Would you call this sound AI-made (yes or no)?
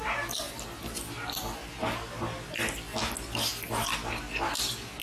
no